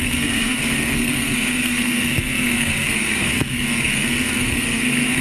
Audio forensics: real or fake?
fake